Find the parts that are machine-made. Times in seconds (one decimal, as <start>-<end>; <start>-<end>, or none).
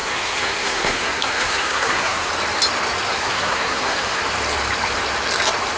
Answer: 0.0-2.3; 3.1-4.2